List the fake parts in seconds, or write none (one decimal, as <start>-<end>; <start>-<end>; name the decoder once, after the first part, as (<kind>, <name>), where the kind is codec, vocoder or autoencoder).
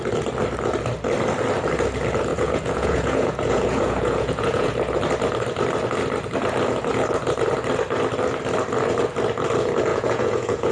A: 2.3-4.7 (vocoder, Vocos); 9.9-10.7